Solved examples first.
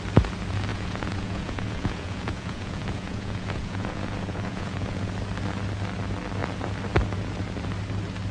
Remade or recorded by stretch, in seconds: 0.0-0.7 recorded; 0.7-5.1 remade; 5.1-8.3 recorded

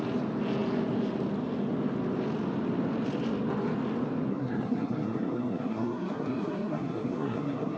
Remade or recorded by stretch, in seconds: 0.0-4.3 recorded; 4.3-7.8 remade

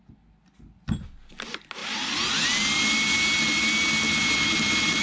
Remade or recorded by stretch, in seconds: 0.0-5.0 recorded

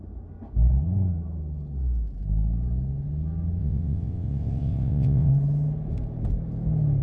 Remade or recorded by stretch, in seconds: 0.0-3.6 recorded; 3.6-5.3 remade; 5.3-7.0 recorded

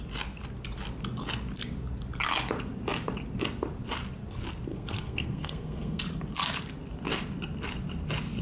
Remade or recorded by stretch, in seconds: 0.0-4.7 recorded; 4.7-6.0 remade; 6.0-8.4 recorded

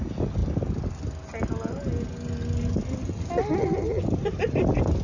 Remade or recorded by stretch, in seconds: 0.0-5.0 recorded

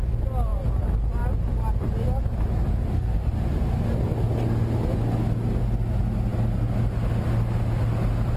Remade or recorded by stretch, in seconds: 0.0-2.7 recorded; 2.7-3.3 remade; 3.3-8.4 recorded